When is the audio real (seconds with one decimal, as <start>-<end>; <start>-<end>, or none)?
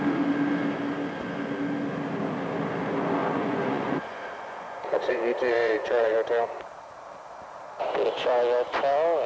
0.0-3.2; 6.1-9.3